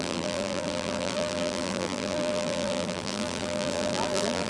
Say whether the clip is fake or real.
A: fake